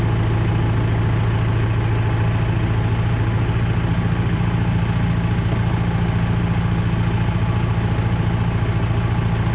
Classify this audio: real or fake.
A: real